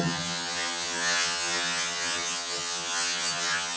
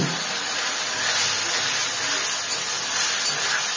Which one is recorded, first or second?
second